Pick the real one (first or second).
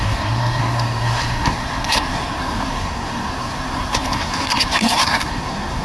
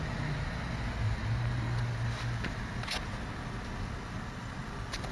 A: second